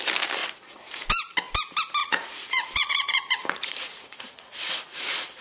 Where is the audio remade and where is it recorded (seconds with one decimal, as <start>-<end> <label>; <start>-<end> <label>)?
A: 0.0-0.4 recorded; 0.4-1.0 remade; 1.0-2.0 recorded; 2.0-5.4 remade